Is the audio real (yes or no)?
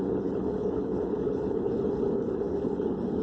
no